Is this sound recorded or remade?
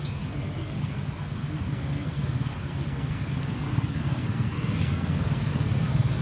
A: remade